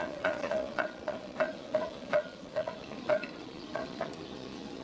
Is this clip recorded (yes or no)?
no